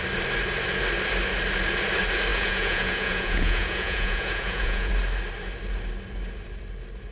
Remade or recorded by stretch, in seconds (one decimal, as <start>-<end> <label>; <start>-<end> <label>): 0.0-2.3 recorded; 2.3-4.9 remade; 4.9-7.1 recorded